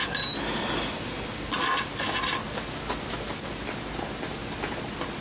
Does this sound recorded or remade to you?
recorded